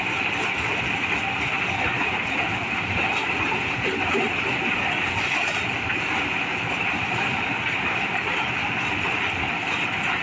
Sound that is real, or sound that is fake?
fake